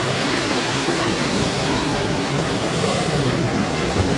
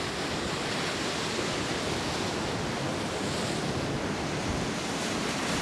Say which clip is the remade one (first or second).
first